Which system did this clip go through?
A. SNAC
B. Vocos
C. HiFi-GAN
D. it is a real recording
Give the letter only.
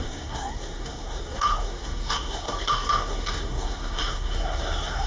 A